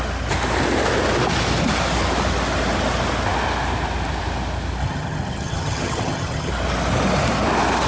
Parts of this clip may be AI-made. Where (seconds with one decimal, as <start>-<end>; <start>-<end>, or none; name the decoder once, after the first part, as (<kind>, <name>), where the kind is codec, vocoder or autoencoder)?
4.8-6.5 (vocoder, HiFi-GAN)